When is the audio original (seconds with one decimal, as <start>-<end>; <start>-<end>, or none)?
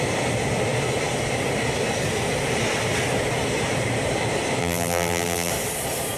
0.0-4.6; 5.5-6.2